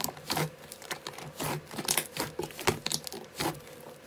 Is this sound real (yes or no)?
yes